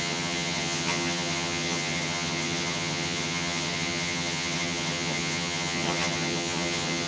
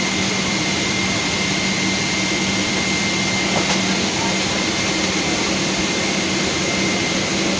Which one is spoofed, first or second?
first